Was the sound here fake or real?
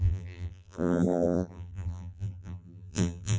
fake